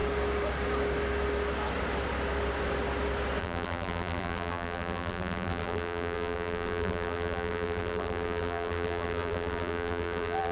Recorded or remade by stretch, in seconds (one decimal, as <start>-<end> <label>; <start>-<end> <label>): 0.0-3.4 recorded; 3.4-10.5 remade